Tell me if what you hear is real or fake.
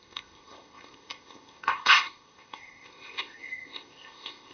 fake